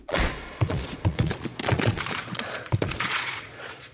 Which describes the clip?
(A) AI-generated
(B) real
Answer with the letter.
A